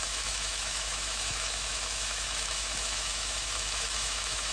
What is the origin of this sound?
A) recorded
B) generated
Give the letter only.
B